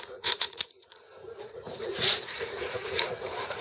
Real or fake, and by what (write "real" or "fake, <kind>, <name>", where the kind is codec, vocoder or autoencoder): fake, vocoder, Vocos